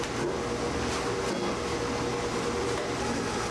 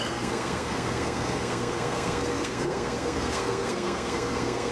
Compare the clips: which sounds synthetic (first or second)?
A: second